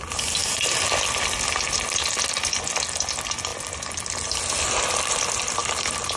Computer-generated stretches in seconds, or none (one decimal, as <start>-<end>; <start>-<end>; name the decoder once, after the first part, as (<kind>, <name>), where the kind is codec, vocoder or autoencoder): none